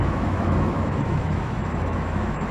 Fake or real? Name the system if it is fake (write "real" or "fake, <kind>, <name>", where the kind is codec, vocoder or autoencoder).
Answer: fake, autoencoder, DAC-VAE